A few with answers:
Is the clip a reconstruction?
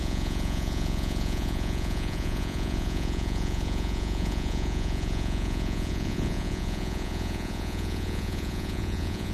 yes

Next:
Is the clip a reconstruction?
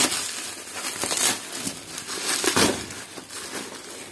no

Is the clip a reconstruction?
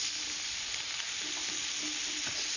no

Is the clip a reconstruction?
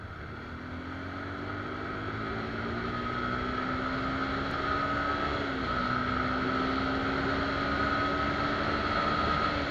no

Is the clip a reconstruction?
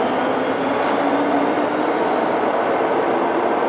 no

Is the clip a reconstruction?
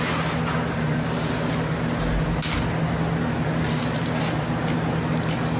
no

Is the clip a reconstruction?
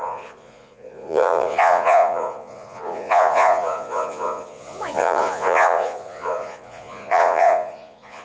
yes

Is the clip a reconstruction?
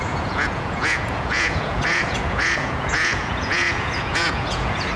yes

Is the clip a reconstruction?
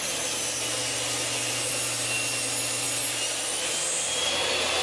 no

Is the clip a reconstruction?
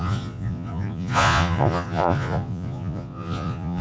yes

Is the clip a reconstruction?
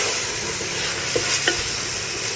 no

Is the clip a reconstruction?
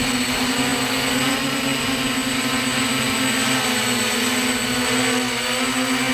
no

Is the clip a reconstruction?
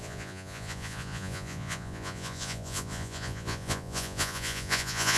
yes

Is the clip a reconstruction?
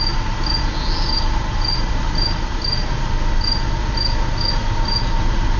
no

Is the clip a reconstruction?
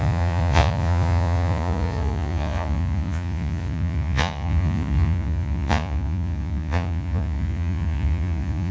yes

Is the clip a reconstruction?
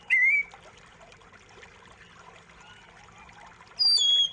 no